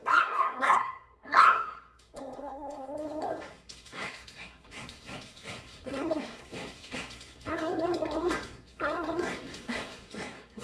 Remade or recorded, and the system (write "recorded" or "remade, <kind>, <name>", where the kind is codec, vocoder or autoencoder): remade, codec, SNAC